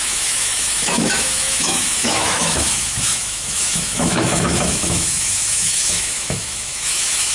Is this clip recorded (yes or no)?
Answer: no